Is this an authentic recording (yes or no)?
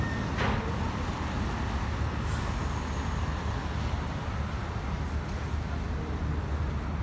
yes